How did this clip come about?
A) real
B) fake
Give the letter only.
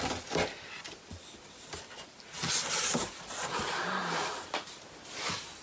A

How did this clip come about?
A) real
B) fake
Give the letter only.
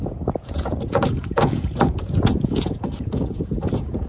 B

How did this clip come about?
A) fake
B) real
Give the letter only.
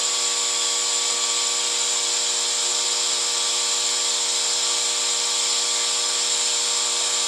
B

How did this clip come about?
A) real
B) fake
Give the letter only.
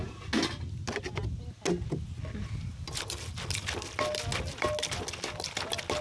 A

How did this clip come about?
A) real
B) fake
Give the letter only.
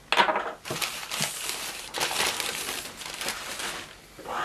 A